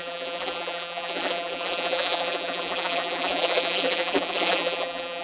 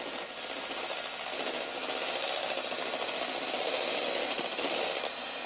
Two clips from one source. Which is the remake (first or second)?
first